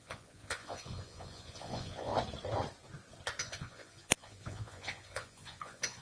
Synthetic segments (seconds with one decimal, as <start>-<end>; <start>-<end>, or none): 0.0-2.1; 3.4-6.0